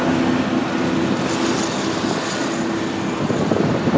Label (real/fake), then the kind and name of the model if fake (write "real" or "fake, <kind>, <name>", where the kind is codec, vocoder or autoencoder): real